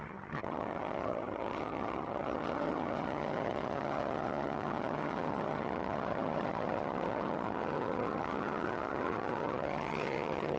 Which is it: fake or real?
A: fake